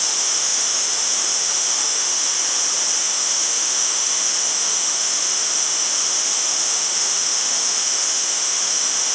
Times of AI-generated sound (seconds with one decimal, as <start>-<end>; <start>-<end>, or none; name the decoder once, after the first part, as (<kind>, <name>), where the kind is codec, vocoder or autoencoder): 0.0-2.3 (autoencoder, DAC-VAE); 3.0-9.1